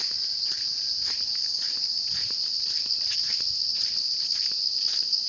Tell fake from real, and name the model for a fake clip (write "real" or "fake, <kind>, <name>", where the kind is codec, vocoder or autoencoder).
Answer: real